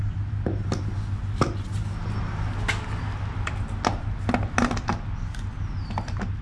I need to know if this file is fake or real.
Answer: real